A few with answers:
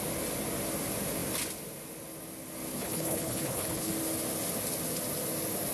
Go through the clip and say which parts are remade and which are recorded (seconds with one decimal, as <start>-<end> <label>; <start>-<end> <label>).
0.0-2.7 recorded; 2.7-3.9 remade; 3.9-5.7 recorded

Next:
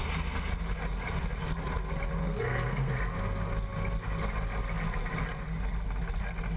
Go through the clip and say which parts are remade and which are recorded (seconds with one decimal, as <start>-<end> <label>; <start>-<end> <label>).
0.0-2.2 recorded; 2.2-2.9 remade; 2.9-6.6 recorded

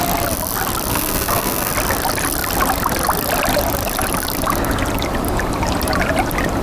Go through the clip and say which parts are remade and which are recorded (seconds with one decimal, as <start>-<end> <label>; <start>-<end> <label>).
0.0-0.9 recorded; 0.9-1.7 remade; 1.7-6.6 recorded

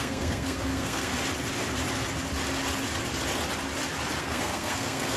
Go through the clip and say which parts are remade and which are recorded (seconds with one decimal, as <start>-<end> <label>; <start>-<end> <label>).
0.0-1.1 remade; 1.1-4.2 recorded; 4.2-5.2 remade